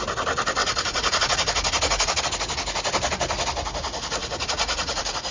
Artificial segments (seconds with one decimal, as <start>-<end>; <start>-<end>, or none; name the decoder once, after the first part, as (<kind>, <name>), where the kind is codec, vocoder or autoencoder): 0.6-2.2 (vocoder, Vocos); 4.2-5.3